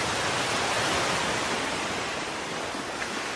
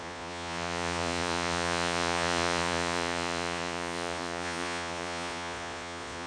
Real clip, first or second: first